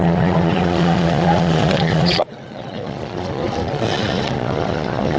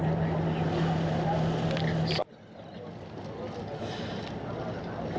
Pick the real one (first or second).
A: second